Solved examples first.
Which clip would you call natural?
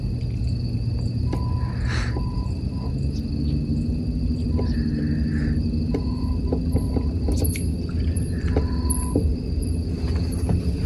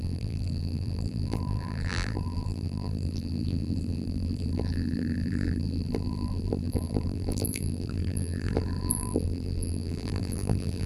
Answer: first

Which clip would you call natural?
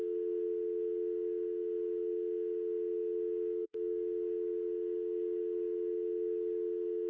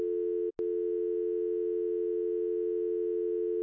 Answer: second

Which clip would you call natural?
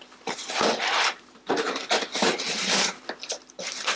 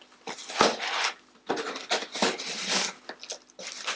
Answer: second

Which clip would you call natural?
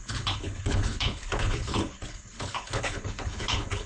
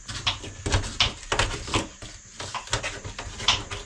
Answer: second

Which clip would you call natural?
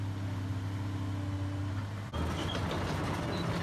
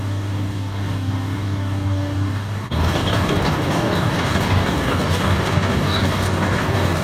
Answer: first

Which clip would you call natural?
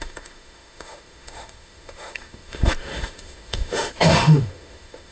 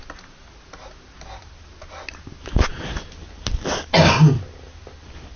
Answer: second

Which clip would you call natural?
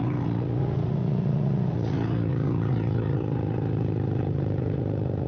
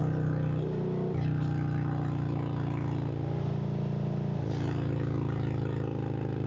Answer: second